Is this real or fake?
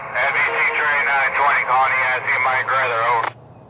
real